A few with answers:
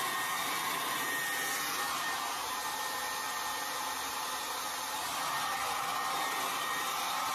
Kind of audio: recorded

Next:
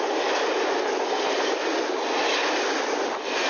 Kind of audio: recorded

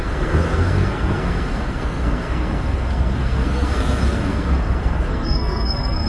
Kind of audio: remade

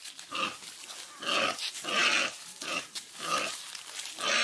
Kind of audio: recorded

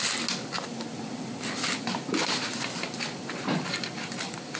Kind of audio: recorded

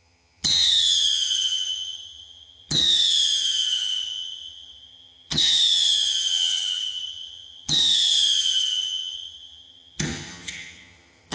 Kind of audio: remade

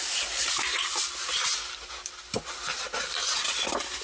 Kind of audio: recorded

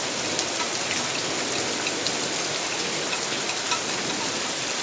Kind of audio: recorded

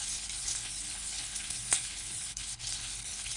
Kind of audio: remade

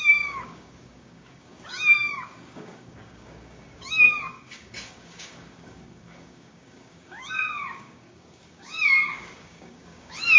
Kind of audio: remade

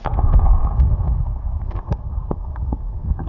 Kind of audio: remade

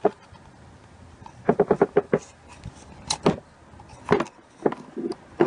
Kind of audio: recorded